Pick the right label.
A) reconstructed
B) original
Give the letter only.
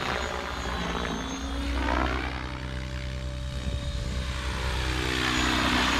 B